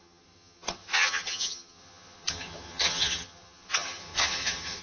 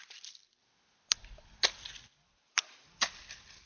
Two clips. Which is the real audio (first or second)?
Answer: second